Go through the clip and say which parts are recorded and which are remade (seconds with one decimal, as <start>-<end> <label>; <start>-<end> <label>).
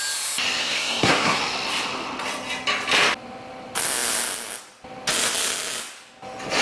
0.0-0.6 recorded; 0.6-1.4 remade; 1.4-6.6 recorded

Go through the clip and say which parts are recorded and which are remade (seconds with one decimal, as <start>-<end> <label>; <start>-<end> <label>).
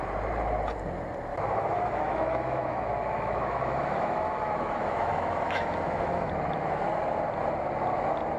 0.0-1.3 recorded; 1.3-6.3 remade; 6.3-8.4 recorded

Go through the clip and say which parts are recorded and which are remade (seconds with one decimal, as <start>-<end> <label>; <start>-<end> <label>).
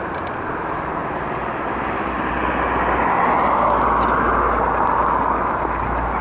0.0-6.2 recorded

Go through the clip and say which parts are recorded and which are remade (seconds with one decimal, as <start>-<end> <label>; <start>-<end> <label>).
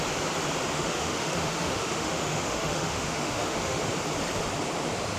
0.0-0.7 recorded; 0.7-3.8 remade; 3.8-5.2 recorded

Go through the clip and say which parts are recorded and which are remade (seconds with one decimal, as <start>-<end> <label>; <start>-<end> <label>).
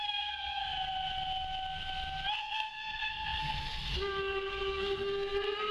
0.0-0.6 remade; 0.6-2.4 recorded; 2.4-5.7 remade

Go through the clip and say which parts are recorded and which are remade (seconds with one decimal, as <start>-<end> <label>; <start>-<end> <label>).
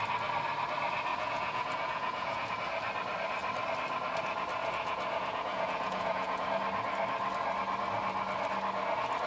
0.0-1.1 recorded; 1.1-2.5 remade; 2.5-4.6 recorded; 4.6-6.5 remade; 6.5-9.3 recorded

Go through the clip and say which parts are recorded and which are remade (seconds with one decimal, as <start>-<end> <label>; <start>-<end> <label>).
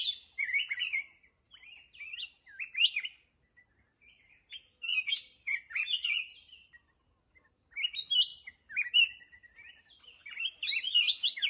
0.0-4.9 recorded; 4.9-5.6 remade; 5.6-11.5 recorded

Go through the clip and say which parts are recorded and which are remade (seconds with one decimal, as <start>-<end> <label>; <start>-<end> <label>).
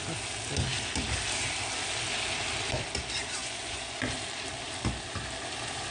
0.0-3.4 recorded; 3.4-4.0 remade; 4.0-5.9 recorded